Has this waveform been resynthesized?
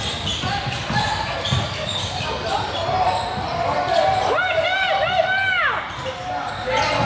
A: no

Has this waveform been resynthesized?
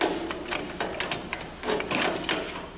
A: no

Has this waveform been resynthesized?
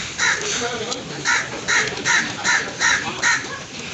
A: yes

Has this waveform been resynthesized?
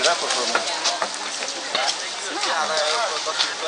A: no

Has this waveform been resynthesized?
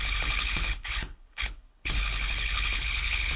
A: yes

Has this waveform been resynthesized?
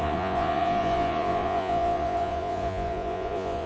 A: yes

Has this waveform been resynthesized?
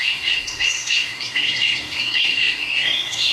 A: yes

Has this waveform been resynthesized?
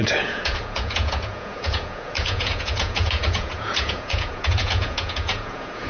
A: yes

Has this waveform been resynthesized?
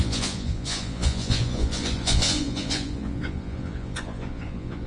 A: yes